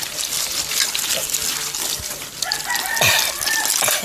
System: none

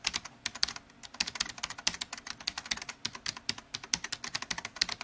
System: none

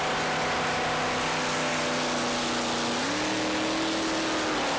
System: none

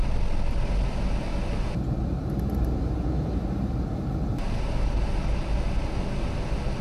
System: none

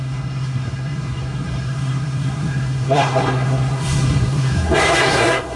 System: codec, SNAC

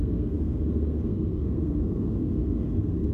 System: codec, SNAC